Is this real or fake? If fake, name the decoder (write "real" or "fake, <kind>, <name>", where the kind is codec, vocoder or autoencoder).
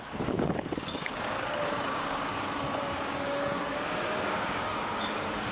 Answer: fake, codec, DAC